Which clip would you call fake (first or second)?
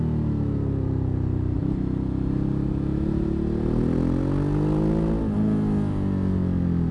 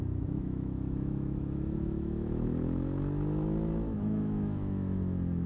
second